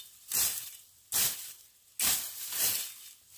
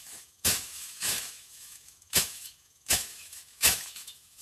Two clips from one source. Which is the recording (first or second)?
first